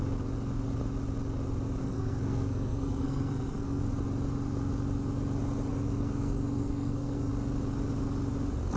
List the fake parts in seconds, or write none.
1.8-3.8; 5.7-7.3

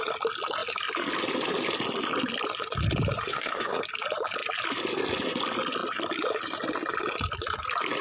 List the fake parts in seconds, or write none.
3.3-3.8

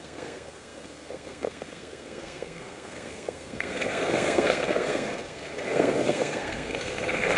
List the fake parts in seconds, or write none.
0.0-7.4

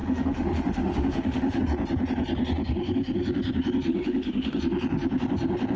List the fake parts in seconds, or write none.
0.0-1.6; 3.9-4.6

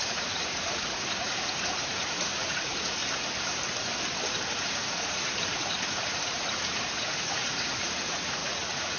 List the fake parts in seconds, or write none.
0.0-3.0; 5.0-9.0